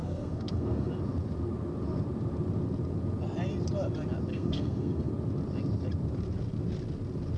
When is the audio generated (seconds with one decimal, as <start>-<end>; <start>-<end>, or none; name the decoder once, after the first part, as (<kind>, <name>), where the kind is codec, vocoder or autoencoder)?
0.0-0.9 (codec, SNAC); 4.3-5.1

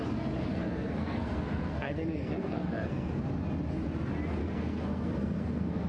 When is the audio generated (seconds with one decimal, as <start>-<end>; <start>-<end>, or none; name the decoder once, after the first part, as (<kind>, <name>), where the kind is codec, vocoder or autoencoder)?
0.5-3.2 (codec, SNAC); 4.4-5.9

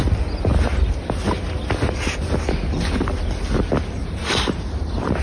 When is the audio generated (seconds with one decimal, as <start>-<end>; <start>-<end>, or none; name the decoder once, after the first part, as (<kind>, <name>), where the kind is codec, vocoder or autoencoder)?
4.0-5.2 (vocoder, BigVGAN v2)

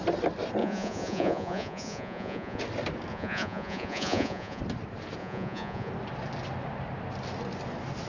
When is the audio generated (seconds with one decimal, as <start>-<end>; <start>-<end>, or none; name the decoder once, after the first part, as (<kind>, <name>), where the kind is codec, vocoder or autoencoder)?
0.6-2.6 (vocoder, Vocos); 3.1-4.6; 5.2-5.9

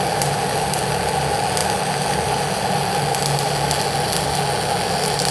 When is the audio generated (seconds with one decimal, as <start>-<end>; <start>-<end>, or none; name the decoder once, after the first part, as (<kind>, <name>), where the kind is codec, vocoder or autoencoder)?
none

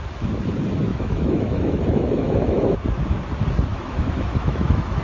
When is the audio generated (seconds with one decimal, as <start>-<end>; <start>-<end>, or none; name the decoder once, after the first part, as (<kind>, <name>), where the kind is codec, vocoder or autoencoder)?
0.9-2.6 (autoencoder, DAC-VAE); 3.7-5.0

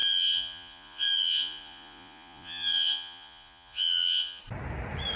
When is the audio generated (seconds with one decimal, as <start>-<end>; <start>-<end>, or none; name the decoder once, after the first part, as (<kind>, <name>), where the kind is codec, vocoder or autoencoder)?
0.0-4.4 (vocoder, Vocos)

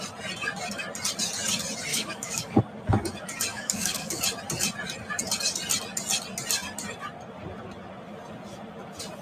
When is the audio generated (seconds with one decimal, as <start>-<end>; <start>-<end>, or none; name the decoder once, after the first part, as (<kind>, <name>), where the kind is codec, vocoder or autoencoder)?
1.9-2.6 (codec, DAC); 3.5-4.2